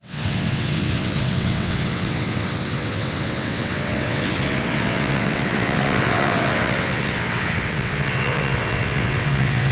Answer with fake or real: fake